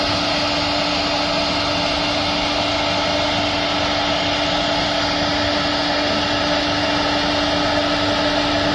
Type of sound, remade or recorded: recorded